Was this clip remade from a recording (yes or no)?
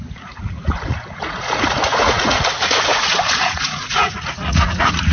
yes